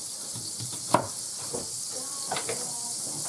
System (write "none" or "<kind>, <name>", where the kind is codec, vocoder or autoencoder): none